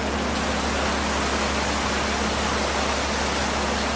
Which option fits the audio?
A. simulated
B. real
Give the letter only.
B